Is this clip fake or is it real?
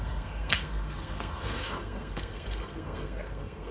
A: fake